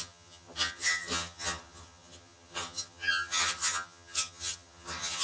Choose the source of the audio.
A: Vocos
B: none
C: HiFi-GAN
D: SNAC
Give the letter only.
C